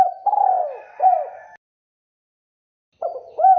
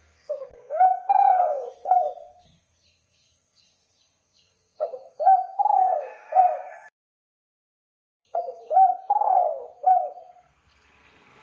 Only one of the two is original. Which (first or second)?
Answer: first